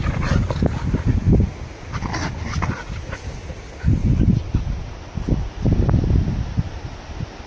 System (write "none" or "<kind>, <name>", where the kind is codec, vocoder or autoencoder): none